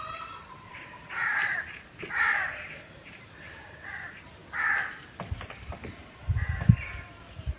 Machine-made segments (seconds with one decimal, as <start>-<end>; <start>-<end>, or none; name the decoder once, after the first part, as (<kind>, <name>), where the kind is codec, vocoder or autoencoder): 0.0-4.4 (vocoder, BigVGAN v2); 6.3-7.6

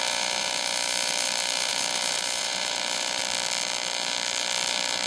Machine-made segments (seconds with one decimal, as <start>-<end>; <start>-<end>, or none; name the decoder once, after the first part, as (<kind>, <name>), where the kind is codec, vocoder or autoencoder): 0.0-3.2 (vocoder, BigVGAN v2)

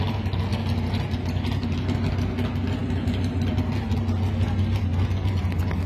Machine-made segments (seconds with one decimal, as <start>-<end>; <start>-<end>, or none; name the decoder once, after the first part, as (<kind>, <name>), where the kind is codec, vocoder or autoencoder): none

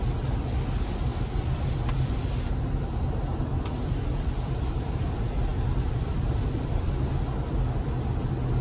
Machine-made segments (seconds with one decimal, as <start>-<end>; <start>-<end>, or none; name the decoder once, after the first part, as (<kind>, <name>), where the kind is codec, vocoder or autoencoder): 1.1-1.8 (vocoder, BigVGAN v2); 3.5-5.0; 5.5-6.9

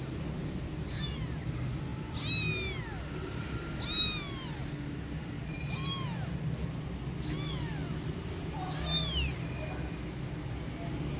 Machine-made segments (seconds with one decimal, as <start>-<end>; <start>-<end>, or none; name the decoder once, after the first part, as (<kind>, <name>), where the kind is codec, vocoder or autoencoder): 7.8-9.7 (vocoder, BigVGAN v2)

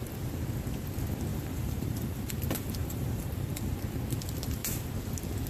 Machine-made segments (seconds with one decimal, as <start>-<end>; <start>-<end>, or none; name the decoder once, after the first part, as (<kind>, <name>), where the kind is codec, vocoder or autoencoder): 1.3-2.3 (vocoder, BigVGAN v2); 2.8-3.7

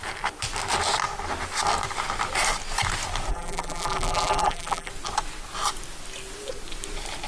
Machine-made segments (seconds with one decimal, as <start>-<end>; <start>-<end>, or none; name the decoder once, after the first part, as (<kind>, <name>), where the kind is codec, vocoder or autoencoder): 3.3-4.9 (vocoder, BigVGAN v2)